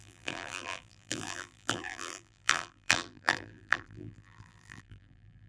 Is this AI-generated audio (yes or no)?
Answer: yes